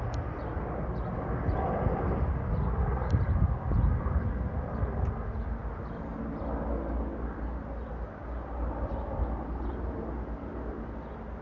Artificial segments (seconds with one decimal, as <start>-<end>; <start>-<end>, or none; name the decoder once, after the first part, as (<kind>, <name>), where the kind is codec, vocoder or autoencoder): none